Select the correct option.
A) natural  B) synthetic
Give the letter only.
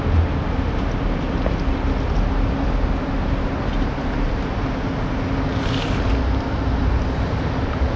A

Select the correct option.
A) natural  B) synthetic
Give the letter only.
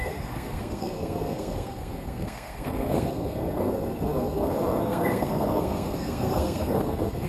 B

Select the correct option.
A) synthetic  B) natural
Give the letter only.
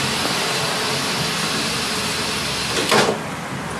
B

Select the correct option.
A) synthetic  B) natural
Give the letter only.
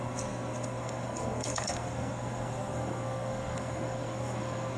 A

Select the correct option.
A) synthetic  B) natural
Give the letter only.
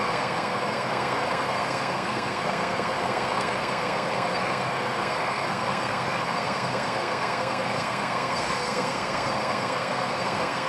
A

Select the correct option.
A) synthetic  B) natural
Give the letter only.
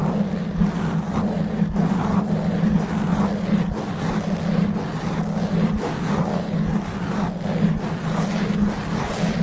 B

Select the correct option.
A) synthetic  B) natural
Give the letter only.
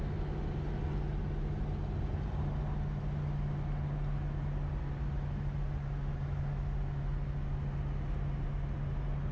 B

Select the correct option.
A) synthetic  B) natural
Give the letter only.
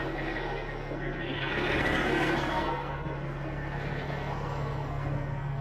A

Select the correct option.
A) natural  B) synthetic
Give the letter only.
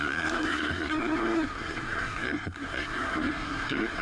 B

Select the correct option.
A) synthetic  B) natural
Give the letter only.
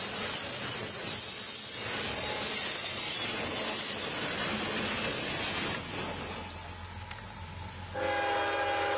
B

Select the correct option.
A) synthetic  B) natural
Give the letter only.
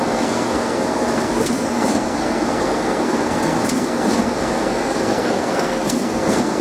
A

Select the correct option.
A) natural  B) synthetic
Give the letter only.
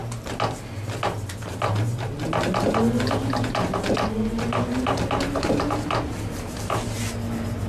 A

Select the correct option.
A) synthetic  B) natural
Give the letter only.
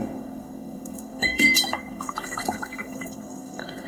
A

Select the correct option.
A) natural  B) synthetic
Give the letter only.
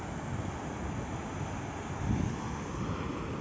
A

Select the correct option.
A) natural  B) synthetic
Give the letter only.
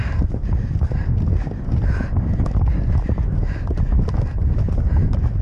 A